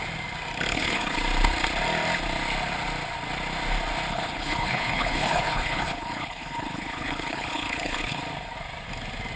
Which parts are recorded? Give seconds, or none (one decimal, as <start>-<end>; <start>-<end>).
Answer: 0.0-0.7; 1.2-4.1; 8.2-9.4